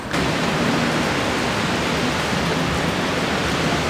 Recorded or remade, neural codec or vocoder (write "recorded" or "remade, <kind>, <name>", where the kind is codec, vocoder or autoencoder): remade, vocoder, BigVGAN v2